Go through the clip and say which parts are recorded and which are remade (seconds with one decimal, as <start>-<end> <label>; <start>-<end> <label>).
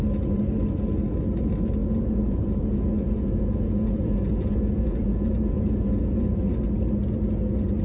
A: 0.0-1.8 recorded; 1.8-6.5 remade; 6.5-7.8 recorded